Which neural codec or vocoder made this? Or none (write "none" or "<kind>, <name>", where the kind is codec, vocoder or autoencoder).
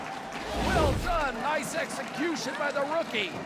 none